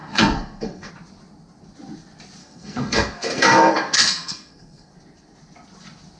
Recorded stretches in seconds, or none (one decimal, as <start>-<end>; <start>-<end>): 0.9-2.4; 4.9-6.2